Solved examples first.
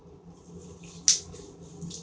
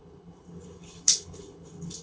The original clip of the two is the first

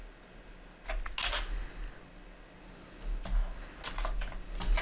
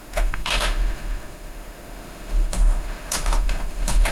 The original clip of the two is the first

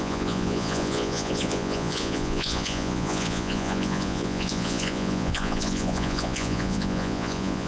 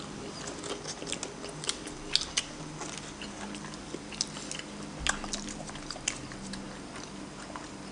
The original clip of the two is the second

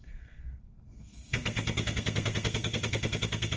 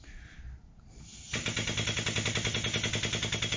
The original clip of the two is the second